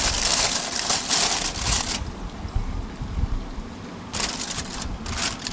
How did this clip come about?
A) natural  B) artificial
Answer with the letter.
A